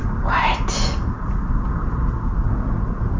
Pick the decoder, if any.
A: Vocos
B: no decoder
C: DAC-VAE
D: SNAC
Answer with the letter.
B